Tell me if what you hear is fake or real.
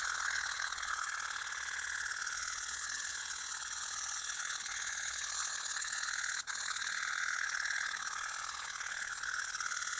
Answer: fake